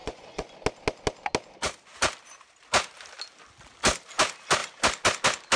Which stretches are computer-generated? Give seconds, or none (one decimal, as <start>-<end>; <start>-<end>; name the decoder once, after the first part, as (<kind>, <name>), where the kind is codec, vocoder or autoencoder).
0.0-0.5 (vocoder, Vocos)